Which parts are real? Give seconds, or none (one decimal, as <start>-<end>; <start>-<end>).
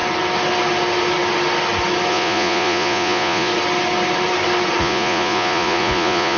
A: 0.0-2.1; 3.5-4.8